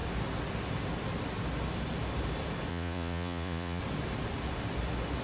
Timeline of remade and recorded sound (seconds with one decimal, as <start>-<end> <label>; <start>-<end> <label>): 0.0-2.7 recorded; 2.7-3.8 remade; 3.8-5.2 recorded

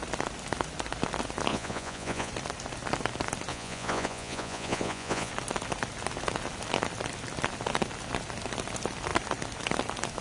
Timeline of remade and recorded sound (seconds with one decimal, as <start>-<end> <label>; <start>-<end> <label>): 0.0-1.5 recorded; 1.5-2.3 remade; 2.3-3.5 recorded; 3.5-5.3 remade; 5.3-10.2 recorded

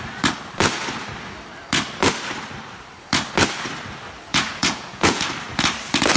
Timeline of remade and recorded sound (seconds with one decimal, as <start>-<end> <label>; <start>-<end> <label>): 0.0-4.3 recorded; 4.3-5.2 remade; 5.2-6.2 recorded